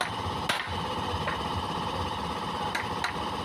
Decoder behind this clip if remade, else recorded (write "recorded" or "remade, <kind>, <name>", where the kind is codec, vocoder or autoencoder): recorded